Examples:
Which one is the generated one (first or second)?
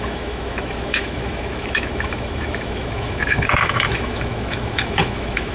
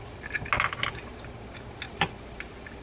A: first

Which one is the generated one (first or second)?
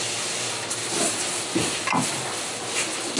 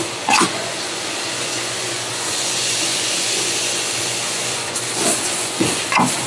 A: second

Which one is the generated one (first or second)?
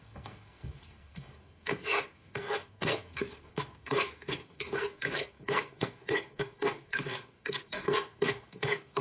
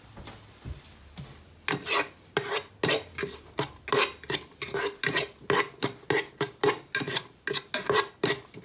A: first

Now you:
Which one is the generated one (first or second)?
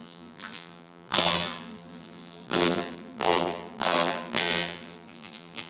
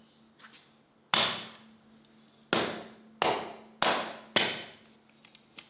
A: first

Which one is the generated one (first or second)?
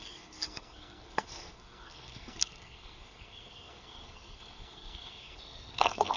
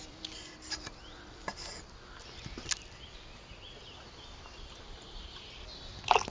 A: first